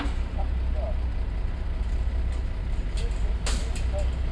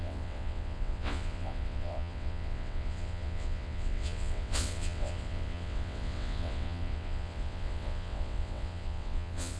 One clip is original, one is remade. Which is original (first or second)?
first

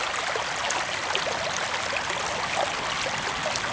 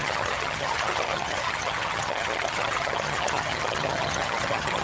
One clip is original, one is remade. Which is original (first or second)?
first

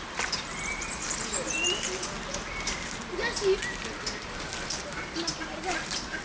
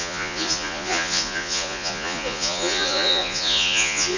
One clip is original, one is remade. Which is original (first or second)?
first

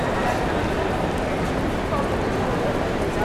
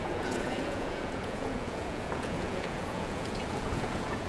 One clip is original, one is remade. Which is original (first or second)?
first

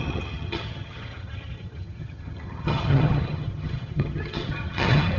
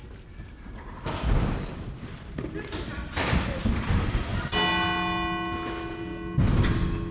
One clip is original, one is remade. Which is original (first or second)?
second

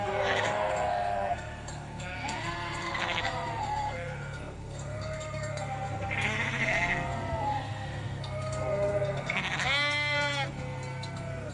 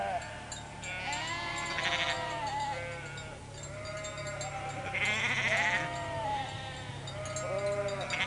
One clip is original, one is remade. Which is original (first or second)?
second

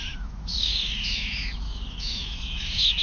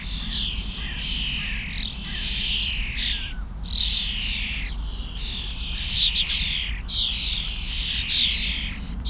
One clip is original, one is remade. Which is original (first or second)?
second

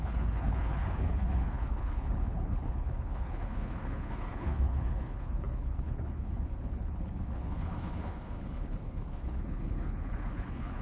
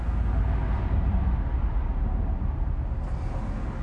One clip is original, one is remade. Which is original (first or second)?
second